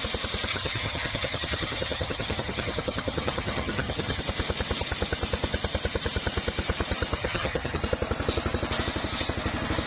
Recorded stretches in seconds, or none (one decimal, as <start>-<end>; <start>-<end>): 0.0-0.5; 4.2-7.2; 7.8-9.9